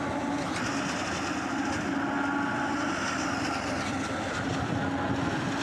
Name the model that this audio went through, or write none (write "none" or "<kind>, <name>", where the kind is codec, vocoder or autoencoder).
none